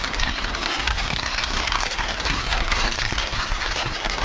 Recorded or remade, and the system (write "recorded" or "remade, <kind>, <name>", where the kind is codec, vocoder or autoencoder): remade, codec, SNAC